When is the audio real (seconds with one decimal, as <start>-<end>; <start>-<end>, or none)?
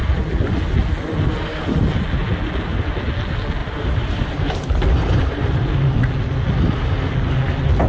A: 0.0-3.6; 5.7-7.9